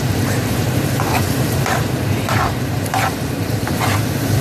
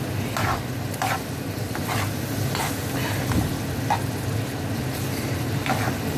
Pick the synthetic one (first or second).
first